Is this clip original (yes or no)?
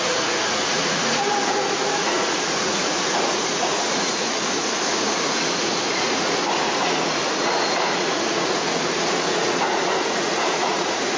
no